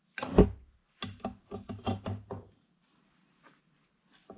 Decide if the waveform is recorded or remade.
recorded